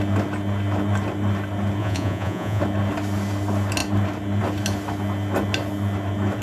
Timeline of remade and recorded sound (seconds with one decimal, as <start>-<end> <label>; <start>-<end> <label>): 0.0-1.8 recorded; 1.8-2.6 remade; 2.6-6.4 recorded